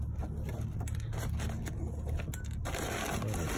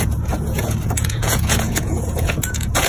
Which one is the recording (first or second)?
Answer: first